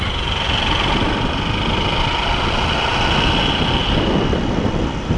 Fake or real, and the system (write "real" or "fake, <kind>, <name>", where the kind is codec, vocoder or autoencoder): real